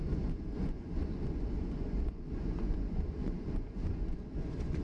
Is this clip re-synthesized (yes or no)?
yes